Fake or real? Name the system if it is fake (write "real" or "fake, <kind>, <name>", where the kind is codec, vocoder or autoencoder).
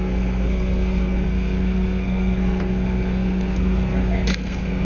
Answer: fake, codec, SNAC